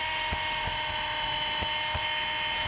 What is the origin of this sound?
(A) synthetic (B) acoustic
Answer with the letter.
B